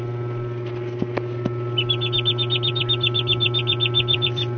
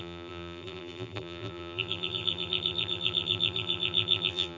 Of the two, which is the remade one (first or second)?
second